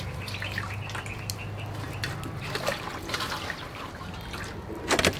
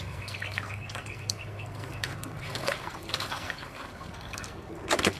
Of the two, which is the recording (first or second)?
first